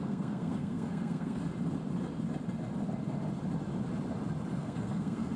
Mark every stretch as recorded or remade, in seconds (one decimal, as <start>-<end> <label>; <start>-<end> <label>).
0.0-1.4 remade; 1.4-4.6 recorded; 4.6-5.4 remade